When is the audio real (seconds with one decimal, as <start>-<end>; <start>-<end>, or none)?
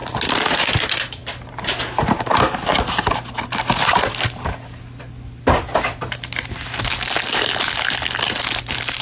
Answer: 0.7-9.0